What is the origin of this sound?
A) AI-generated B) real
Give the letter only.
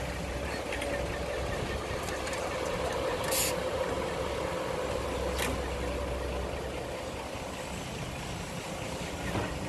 B